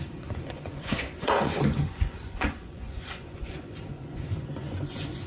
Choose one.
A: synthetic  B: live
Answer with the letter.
A